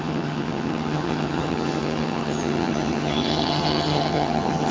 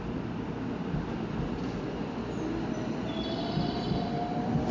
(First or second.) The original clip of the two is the second